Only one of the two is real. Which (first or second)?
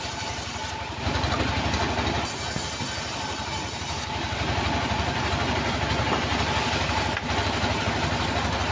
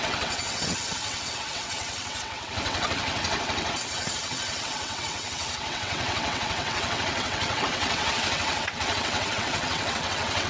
first